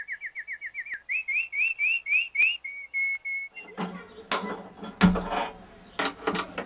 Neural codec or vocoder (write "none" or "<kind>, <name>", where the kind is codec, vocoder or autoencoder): none